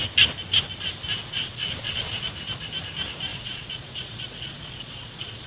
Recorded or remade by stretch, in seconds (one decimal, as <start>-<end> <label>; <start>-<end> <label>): 0.0-1.2 recorded; 1.2-2.3 remade; 2.3-3.3 recorded; 3.3-5.5 remade